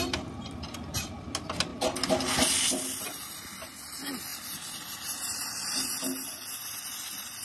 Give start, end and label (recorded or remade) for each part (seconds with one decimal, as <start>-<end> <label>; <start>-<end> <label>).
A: 0.0-7.4 recorded

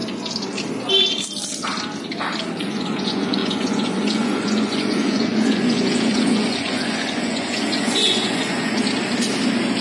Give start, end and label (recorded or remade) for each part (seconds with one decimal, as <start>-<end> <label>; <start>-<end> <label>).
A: 0.0-2.6 recorded; 2.6-8.8 remade; 8.8-9.8 recorded

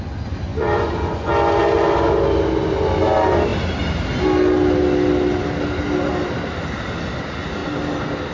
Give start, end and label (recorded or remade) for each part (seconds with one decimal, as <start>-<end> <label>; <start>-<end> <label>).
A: 0.0-0.5 recorded; 0.5-1.3 remade; 1.3-8.3 recorded

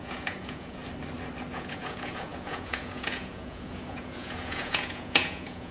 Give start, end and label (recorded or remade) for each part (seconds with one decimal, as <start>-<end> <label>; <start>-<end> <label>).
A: 0.0-0.8 remade; 0.8-1.5 recorded; 1.5-5.7 remade

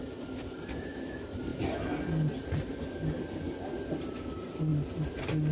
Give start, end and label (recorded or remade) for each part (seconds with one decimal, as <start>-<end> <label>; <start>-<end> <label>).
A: 0.0-5.5 recorded

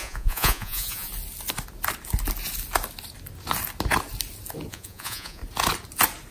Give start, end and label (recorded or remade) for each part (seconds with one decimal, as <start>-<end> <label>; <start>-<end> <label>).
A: 0.0-1.1 remade; 1.1-4.7 recorded; 4.7-5.4 remade; 5.4-6.3 recorded

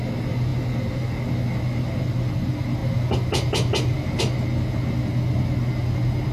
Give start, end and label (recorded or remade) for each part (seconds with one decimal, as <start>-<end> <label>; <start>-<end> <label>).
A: 0.0-6.3 recorded